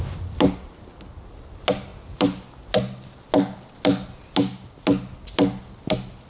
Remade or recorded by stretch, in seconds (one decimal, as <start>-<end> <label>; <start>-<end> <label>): 0.0-6.3 recorded